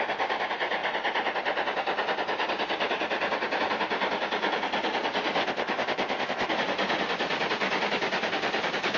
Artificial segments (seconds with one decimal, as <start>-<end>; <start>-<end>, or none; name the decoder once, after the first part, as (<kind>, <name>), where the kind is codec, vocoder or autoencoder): 5.4-6.5 (codec, ZipCodec)